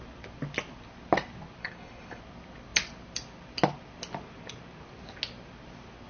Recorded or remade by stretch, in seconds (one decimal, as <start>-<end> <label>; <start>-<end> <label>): 0.0-1.6 recorded; 1.6-2.2 remade; 2.2-6.1 recorded